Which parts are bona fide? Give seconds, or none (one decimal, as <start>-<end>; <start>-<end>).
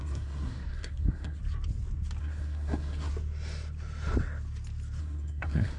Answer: 1.4-2.2; 3.1-5.0